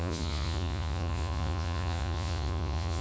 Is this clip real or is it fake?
fake